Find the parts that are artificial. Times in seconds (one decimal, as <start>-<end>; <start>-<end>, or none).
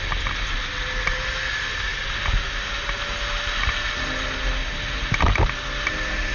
none